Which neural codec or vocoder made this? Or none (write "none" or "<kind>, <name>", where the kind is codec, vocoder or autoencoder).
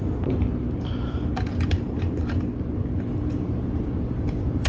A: vocoder, BigVGAN v2